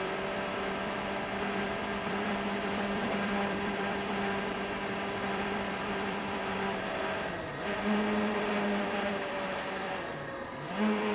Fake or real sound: fake